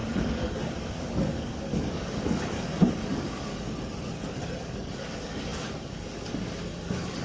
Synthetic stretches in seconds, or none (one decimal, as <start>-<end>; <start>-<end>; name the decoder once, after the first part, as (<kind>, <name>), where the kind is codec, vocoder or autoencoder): 0.0-3.5 (codec, DAC); 4.6-7.2